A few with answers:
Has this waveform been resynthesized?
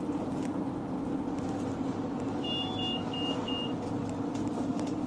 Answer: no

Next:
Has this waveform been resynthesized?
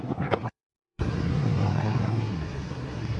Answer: yes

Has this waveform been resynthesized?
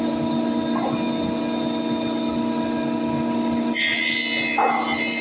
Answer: no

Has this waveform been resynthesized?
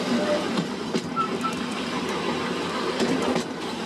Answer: no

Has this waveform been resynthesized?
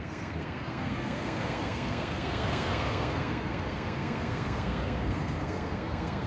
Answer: yes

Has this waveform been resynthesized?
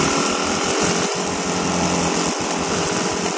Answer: no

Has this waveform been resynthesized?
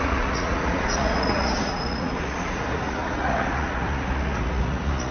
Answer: yes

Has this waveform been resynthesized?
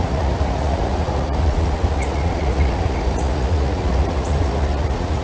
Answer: yes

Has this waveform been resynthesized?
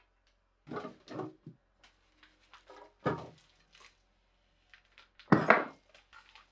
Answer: no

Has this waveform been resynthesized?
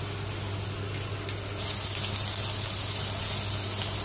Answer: no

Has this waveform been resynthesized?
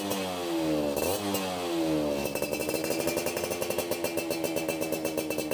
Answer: no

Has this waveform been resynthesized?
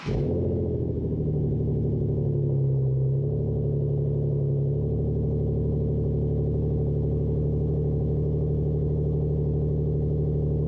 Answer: yes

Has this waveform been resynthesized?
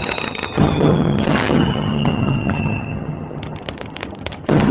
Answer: yes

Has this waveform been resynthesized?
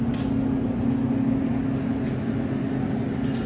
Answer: no